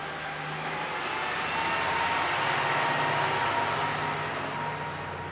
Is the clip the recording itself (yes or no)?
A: yes